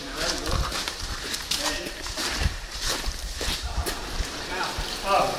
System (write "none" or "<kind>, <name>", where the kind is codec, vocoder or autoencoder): vocoder, BigVGAN v2